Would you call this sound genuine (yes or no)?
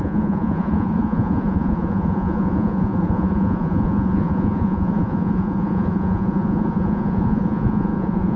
no